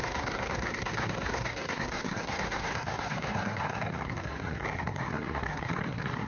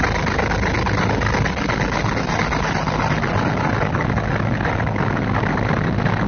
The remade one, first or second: first